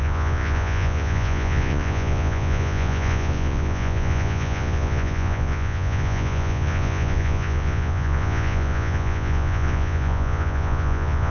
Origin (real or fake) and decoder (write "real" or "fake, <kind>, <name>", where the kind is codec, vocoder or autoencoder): fake, vocoder, Vocos